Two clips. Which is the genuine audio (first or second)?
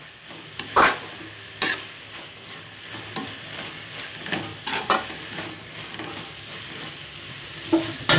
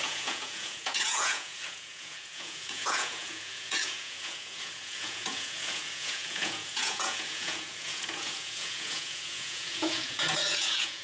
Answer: first